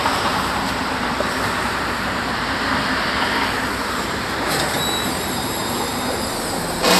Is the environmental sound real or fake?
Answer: fake